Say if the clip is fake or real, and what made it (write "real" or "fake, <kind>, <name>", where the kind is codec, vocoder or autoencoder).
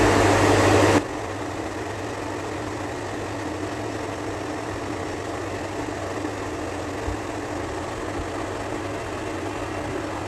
real